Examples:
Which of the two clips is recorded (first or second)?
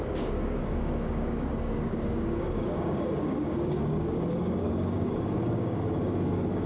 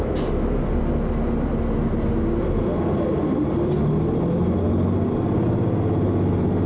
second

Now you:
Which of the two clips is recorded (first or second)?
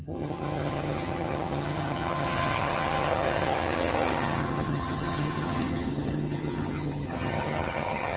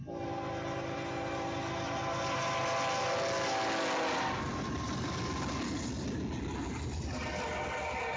second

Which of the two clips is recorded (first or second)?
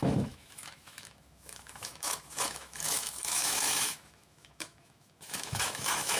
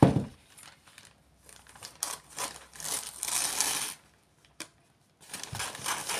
second